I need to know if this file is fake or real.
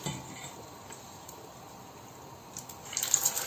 real